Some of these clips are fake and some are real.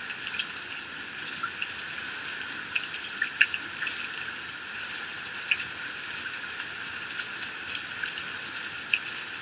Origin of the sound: real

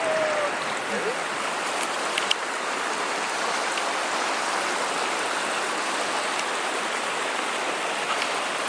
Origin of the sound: real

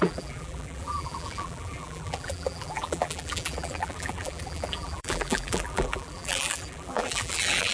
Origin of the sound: fake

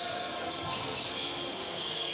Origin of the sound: fake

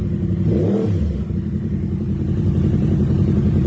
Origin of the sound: fake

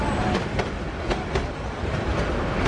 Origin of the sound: real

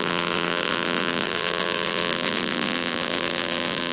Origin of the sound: fake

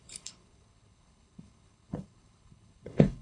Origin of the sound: fake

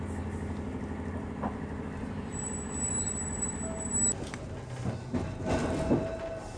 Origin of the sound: real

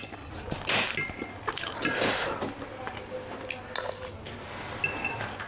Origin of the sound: real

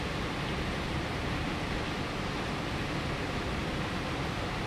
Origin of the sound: real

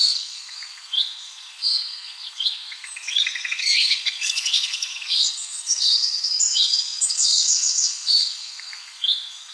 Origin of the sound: fake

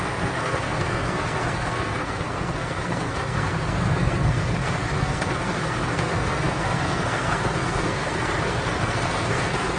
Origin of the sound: fake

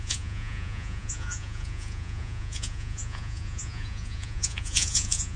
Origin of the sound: fake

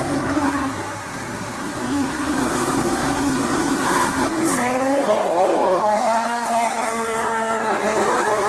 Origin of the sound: fake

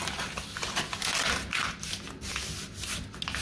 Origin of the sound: real